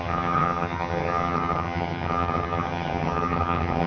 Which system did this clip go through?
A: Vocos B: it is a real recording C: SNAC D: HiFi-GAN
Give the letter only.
D